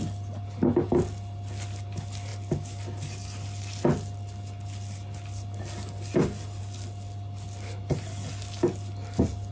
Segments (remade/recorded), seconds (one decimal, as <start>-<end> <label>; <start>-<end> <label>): 0.0-9.5 recorded